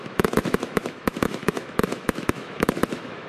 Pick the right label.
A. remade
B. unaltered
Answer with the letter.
A